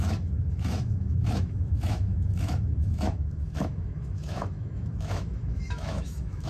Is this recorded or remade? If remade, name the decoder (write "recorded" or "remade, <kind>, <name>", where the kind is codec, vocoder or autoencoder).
remade, autoencoder, DAC-VAE